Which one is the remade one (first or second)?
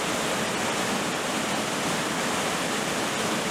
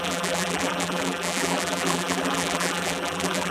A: second